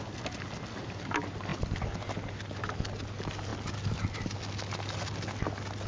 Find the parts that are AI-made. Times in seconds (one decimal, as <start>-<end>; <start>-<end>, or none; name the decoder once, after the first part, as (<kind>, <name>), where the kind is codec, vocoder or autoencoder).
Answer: none